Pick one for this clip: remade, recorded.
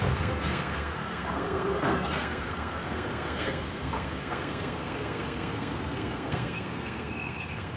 remade